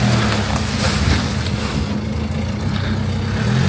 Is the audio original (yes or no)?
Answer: yes